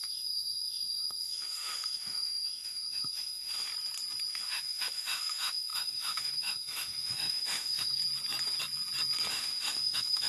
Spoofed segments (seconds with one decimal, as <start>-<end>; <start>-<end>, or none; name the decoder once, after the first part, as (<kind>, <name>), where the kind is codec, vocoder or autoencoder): 0.0-3.7 (autoencoder, DAC-VAE); 4.3-8.0; 9.3-10.3